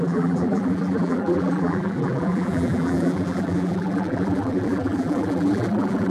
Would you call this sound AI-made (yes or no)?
yes